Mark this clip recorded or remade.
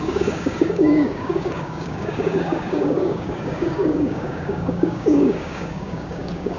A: remade